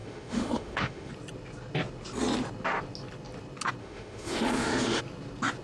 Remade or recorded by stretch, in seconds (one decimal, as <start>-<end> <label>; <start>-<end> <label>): 0.0-1.1 remade; 1.1-3.8 recorded; 3.8-5.0 remade; 5.0-5.6 recorded